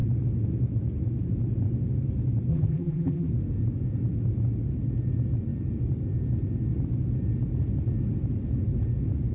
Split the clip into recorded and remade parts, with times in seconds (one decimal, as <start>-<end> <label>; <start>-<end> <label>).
0.0-2.5 recorded; 2.5-3.3 remade; 3.3-9.3 recorded